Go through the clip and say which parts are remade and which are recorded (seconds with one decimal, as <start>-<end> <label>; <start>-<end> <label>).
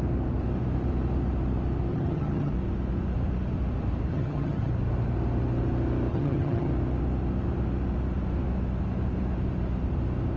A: 0.0-1.9 recorded; 1.9-2.5 remade; 2.5-4.1 recorded; 4.1-4.7 remade; 4.7-6.1 recorded; 6.1-6.7 remade; 6.7-10.4 recorded